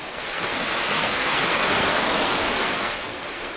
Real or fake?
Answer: fake